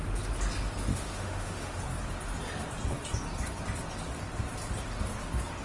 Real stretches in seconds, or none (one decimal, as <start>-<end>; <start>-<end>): 0.0-0.9; 1.8-5.6